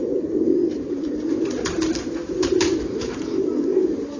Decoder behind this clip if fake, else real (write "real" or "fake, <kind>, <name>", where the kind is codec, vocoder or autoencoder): real